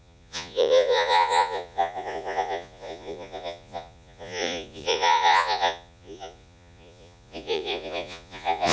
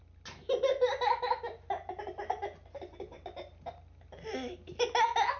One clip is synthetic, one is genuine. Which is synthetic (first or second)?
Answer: first